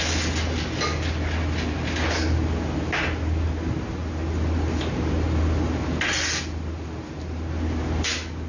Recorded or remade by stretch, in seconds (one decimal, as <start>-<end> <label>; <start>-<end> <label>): 0.0-8.5 recorded